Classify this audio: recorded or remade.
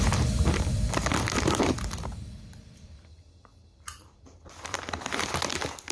remade